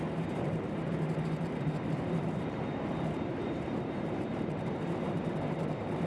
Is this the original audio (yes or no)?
no